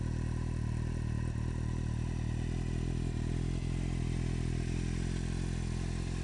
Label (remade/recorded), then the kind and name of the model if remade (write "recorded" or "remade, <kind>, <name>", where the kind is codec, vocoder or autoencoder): recorded